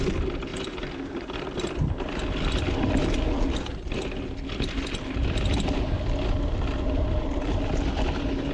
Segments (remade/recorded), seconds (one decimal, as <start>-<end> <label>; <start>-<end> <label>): 0.0-0.5 recorded; 0.5-3.8 remade; 3.8-8.5 recorded